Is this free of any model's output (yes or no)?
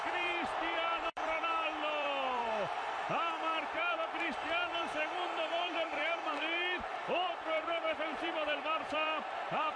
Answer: no